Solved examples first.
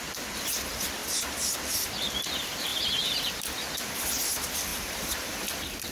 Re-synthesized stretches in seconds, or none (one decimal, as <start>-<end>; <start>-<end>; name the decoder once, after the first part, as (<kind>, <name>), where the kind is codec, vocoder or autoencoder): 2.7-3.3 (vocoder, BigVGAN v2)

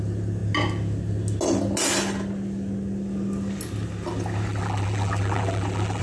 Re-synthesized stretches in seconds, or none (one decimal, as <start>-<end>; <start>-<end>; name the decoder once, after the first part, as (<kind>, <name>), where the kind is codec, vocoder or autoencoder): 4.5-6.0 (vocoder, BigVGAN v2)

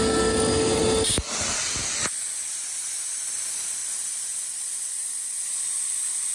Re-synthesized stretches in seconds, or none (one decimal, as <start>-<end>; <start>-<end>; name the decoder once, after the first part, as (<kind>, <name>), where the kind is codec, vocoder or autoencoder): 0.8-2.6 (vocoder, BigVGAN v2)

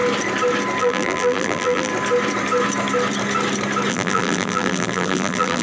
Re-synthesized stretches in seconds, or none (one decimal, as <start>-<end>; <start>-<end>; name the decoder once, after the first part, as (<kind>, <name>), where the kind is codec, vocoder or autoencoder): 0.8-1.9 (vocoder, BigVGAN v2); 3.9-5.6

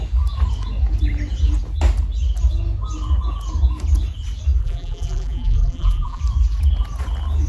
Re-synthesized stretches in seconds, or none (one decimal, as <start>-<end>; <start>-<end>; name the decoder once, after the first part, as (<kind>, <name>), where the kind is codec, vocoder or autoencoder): 4.6-6.2 (vocoder, BigVGAN v2)

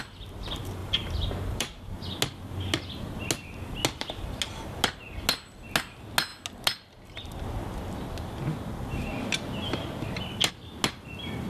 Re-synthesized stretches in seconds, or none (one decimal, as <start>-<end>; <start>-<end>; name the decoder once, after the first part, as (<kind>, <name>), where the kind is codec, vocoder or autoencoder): 0.8-1.9 (vocoder, BigVGAN v2)

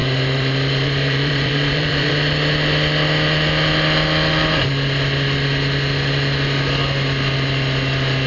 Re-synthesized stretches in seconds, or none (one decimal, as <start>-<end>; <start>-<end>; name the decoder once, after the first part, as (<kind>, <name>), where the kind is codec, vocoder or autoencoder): 0.0-2.1 (vocoder, BigVGAN v2)